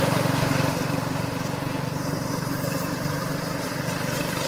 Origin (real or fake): fake